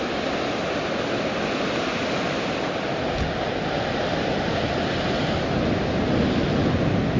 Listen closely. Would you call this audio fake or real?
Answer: real